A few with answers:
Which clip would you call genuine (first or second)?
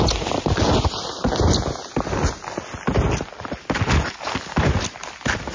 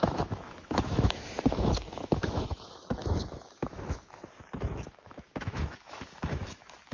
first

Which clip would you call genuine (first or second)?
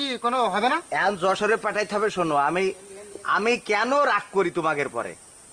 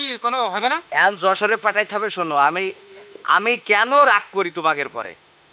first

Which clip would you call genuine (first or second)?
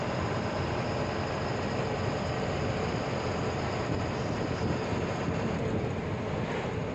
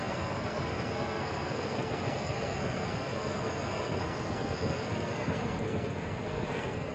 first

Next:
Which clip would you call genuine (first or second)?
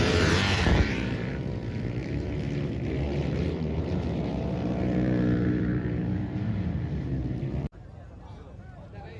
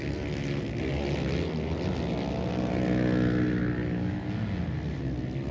second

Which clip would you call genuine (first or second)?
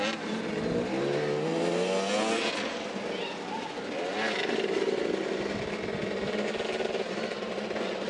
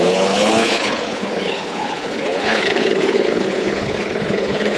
first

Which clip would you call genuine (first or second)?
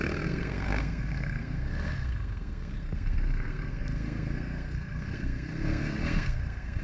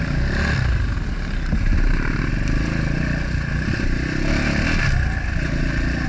second